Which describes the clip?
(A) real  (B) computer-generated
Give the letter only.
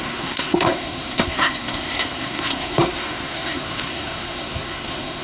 B